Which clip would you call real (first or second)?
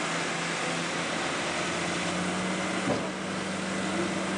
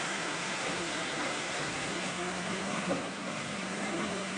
first